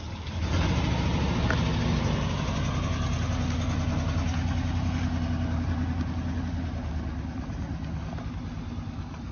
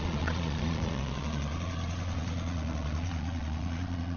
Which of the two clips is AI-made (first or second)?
second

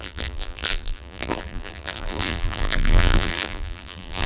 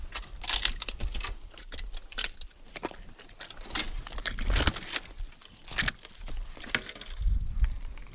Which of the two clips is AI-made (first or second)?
first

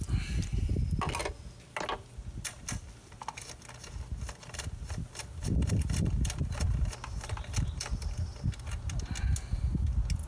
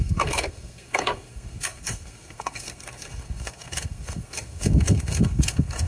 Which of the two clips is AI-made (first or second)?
second